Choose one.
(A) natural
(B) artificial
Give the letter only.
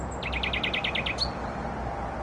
A